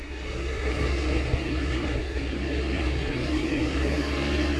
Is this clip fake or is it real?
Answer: fake